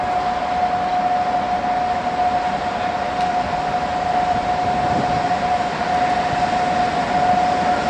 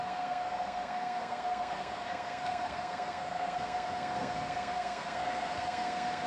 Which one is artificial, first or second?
second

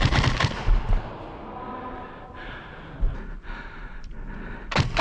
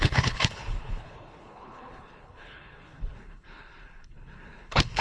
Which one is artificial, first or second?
second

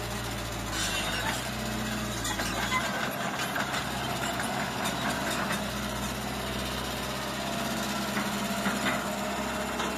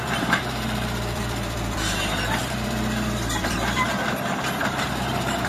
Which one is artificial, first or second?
second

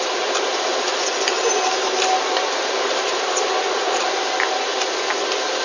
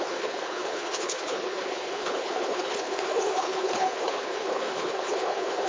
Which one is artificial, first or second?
second